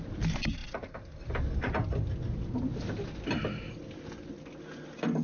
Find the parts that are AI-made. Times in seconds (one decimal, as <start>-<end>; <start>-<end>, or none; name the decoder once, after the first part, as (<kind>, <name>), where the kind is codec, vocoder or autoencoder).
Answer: none